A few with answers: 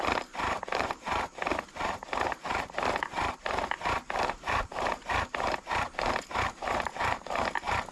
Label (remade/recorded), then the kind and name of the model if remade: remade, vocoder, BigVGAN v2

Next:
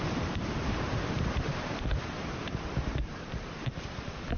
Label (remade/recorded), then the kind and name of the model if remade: remade, vocoder, BigVGAN v2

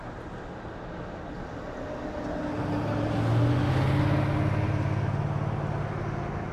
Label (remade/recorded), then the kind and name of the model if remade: recorded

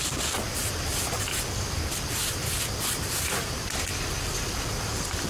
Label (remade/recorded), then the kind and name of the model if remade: remade, vocoder, BigVGAN v2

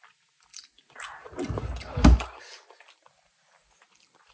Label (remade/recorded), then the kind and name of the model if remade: recorded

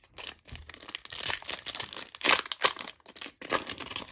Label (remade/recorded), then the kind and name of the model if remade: recorded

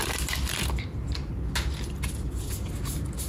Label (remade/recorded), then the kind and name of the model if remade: recorded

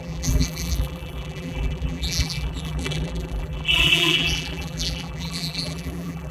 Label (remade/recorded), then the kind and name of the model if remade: remade, vocoder, BigVGAN v2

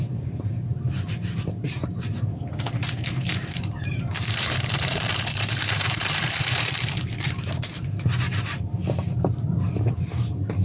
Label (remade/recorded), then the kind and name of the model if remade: remade, vocoder, BigVGAN v2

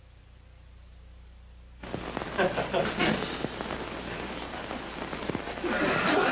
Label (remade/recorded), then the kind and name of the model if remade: remade, vocoder, BigVGAN v2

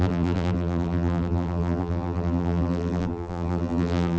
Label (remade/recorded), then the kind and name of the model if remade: remade, vocoder, BigVGAN v2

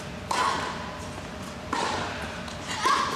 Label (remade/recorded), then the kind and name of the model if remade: recorded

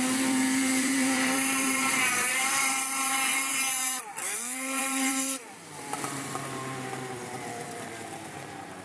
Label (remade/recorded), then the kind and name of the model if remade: remade, vocoder, BigVGAN v2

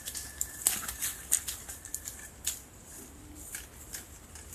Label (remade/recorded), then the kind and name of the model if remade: remade, vocoder, BigVGAN v2